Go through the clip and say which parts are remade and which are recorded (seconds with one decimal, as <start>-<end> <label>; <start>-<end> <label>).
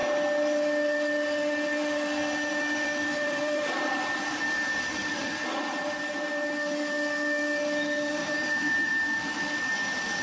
0.0-3.1 recorded; 3.1-4.0 remade; 4.0-5.0 recorded; 5.0-5.8 remade; 5.8-8.2 recorded; 8.2-8.9 remade; 8.9-10.2 recorded